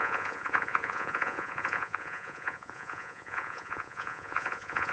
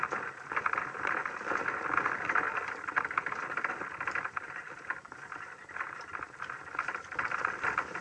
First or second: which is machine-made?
first